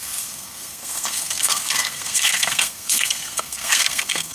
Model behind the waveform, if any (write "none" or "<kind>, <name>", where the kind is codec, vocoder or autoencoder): codec, SNAC